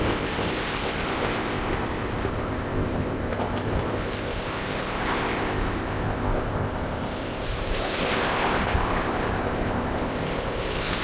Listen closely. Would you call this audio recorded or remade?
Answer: remade